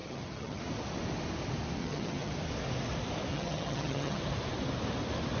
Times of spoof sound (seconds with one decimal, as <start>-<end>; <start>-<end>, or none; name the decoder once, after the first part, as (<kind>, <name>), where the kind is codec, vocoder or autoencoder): 0.0-0.6 (vocoder, HiFi-GAN); 1.8-2.3; 3.3-4.2